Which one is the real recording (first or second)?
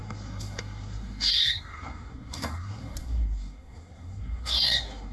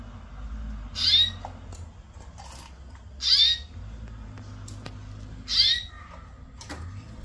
second